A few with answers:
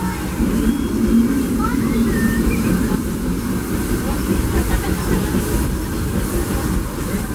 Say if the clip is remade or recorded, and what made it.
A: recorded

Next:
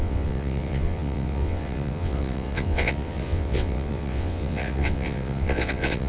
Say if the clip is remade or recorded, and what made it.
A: remade, vocoder, WaveNeXt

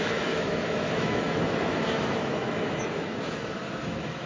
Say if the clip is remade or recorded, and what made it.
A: remade, autoencoder, DAC-VAE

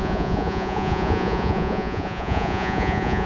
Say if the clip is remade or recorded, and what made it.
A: remade, vocoder, Vocos